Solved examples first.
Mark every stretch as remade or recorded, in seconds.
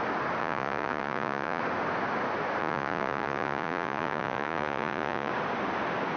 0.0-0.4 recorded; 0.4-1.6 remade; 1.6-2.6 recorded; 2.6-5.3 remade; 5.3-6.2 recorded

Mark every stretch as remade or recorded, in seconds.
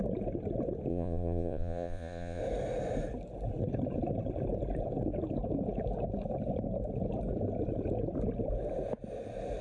0.0-0.9 recorded; 0.9-2.4 remade; 2.4-9.6 recorded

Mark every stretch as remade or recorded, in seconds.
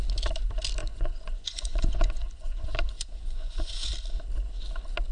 0.0-0.8 recorded; 0.8-3.9 remade; 3.9-5.1 recorded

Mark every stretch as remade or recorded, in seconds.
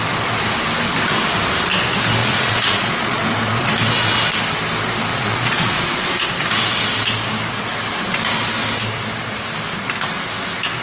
0.0-2.2 recorded; 2.2-3.2 remade; 3.2-5.1 recorded; 5.1-6.3 remade; 6.3-10.8 recorded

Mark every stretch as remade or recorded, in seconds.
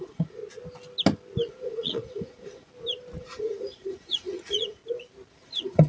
0.0-0.4 remade; 0.4-1.5 recorded; 1.5-2.7 remade; 2.7-3.2 recorded; 3.2-4.8 remade; 4.8-5.3 recorded; 5.3-5.9 remade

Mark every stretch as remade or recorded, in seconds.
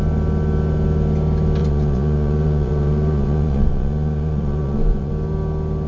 0.0-1.6 recorded; 1.6-5.1 remade; 5.1-5.9 recorded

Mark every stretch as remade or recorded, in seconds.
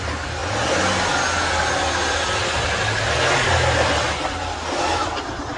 0.0-5.6 recorded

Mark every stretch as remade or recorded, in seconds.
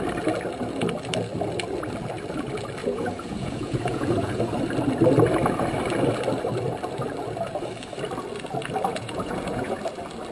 0.0-2.8 recorded; 2.8-4.4 remade; 4.4-8.9 recorded; 8.9-9.8 remade; 9.8-10.3 recorded